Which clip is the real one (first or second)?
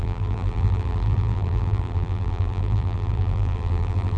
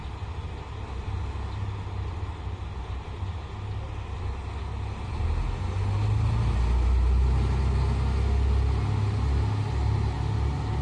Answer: second